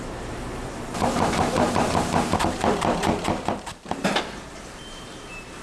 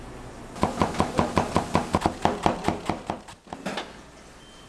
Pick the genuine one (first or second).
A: second